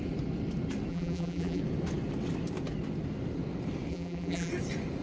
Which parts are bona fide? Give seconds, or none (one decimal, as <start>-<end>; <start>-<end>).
0.0-0.9; 1.6-3.9; 4.5-5.0